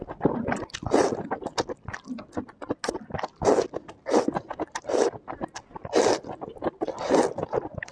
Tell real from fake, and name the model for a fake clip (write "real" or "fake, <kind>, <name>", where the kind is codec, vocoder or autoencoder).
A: real